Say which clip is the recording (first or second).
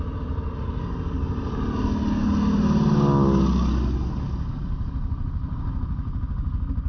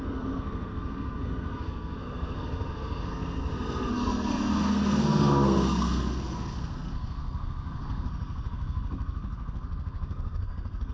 first